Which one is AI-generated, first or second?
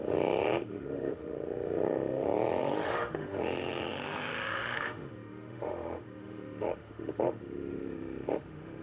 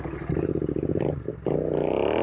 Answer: first